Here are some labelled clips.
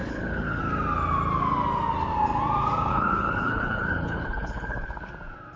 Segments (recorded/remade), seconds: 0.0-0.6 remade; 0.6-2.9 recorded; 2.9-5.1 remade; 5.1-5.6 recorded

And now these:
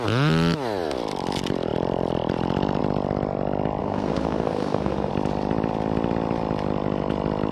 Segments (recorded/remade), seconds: 0.0-3.8 recorded; 3.8-5.1 remade; 5.1-7.5 recorded

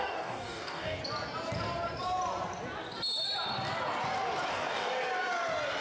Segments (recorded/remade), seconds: 0.0-1.0 remade; 1.0-4.5 recorded; 4.5-4.9 remade; 4.9-5.8 recorded

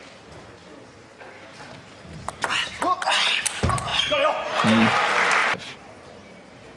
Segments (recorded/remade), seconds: 0.0-3.9 recorded; 3.9-5.0 remade; 5.0-5.4 recorded; 5.4-6.8 remade

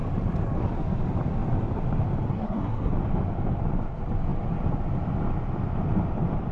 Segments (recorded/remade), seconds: 0.0-2.3 recorded; 2.3-2.9 remade; 2.9-6.5 recorded

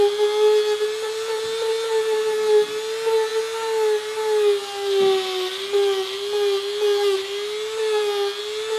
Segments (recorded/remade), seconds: 0.0-8.8 recorded

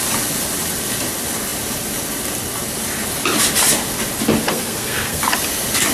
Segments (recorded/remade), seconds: 0.0-4.5 recorded; 4.5-5.2 remade; 5.2-5.9 recorded

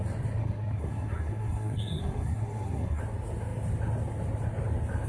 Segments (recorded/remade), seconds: 0.0-0.4 recorded; 0.4-3.0 remade; 3.0-5.1 recorded